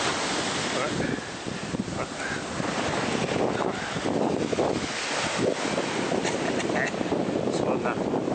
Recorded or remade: recorded